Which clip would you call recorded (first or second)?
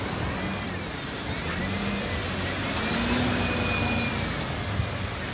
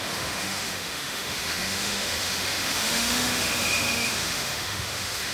first